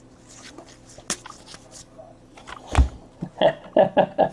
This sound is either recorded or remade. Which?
recorded